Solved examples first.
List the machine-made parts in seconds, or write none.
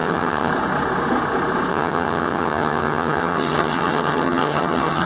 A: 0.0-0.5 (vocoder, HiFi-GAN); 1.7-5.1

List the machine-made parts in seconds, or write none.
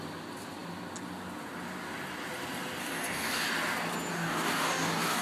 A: 2.8-3.5 (codec, DAC); 4.1-5.2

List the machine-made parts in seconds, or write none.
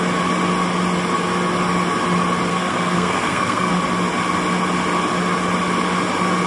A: 2.5-3.7 (codec, SNAC)